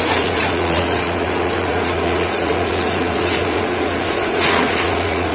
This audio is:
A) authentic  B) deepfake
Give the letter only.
B